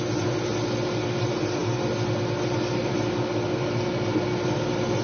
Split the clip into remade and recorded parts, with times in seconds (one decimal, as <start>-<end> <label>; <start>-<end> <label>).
0.0-5.0 recorded